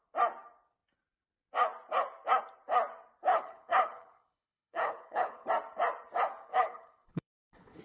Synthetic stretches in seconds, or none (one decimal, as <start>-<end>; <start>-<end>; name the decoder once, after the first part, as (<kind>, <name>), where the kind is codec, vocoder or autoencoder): 3.3-5.5 (codec, HILCodec); 6.5-7.8